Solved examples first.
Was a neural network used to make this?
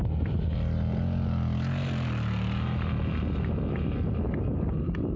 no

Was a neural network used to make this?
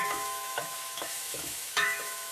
yes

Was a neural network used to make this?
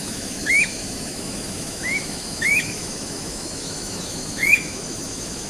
yes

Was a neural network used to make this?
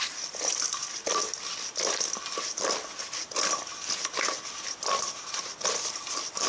no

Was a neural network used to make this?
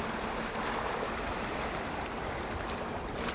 no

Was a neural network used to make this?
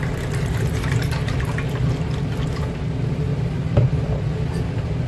no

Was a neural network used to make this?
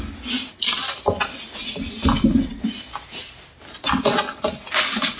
no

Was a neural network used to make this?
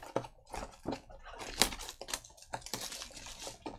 no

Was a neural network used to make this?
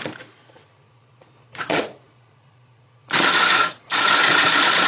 yes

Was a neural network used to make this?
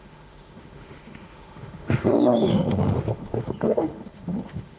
yes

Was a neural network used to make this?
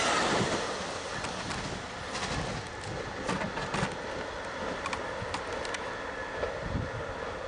no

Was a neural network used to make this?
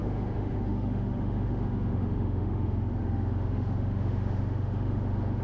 yes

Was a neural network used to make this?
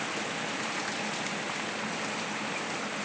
no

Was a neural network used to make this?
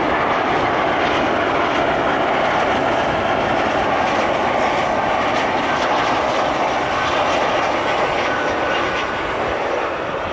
no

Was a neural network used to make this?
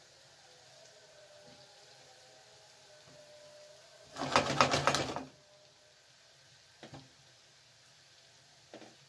no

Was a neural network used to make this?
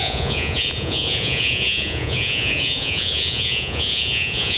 yes